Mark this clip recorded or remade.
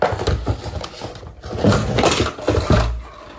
recorded